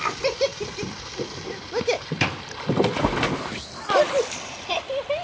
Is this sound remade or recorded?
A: recorded